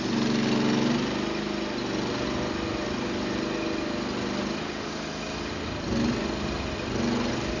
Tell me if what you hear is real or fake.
real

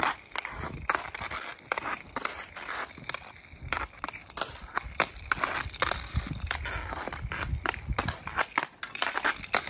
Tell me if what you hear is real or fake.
real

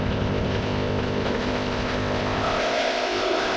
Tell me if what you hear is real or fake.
fake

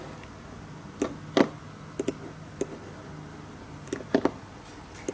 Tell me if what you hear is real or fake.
real